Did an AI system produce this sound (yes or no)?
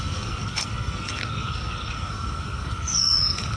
yes